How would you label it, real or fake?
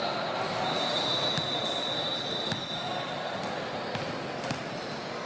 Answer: real